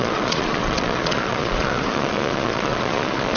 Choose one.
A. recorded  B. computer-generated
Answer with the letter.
B